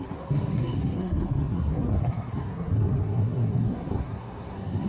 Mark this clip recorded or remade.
remade